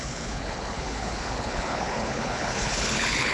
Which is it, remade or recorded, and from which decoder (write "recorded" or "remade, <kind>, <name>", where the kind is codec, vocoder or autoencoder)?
remade, codec, HILCodec